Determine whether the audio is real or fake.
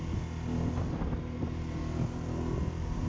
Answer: real